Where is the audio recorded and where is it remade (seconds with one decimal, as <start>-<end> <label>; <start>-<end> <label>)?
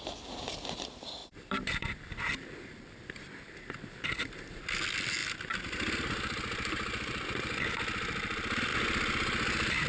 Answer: 0.0-1.2 recorded; 1.2-2.2 remade; 2.2-5.2 recorded; 5.2-7.6 remade; 7.6-9.9 recorded